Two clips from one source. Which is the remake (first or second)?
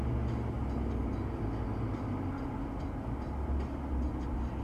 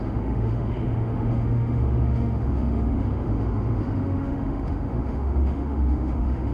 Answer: second